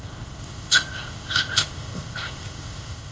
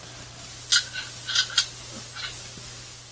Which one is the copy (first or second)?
first